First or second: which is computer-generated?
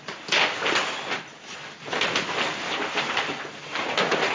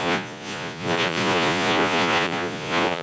second